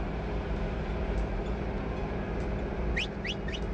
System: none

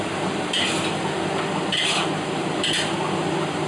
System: none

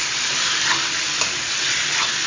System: none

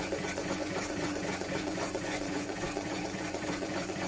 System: vocoder, Vocos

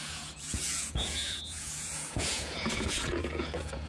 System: vocoder, Vocos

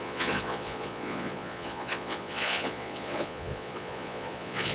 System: vocoder, Vocos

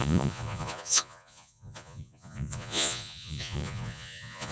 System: vocoder, Vocos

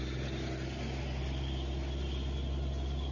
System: none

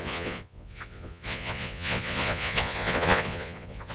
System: vocoder, Vocos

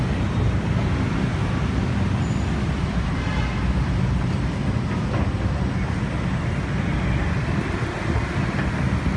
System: none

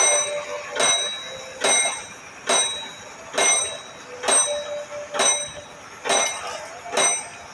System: none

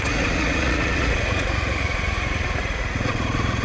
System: vocoder, Vocos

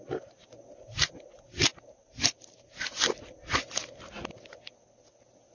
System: none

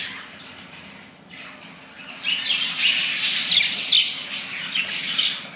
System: none